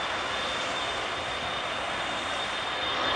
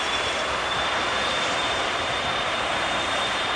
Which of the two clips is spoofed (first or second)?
second